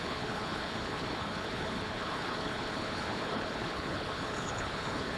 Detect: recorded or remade remade